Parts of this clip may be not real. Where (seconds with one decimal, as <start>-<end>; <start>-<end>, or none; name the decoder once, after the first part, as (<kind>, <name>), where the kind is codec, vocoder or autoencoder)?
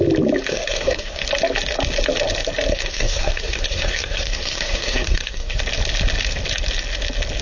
0.5-1.2 (codec, SNAC); 2.7-5.6